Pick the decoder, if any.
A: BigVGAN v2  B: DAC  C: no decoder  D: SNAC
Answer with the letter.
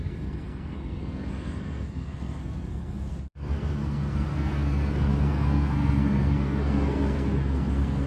D